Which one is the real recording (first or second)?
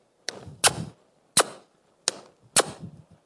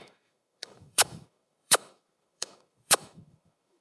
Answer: first